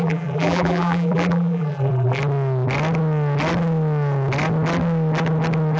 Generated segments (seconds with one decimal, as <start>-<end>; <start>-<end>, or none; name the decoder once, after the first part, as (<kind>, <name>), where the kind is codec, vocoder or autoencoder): 0.0-2.2 (vocoder, BigVGAN v2)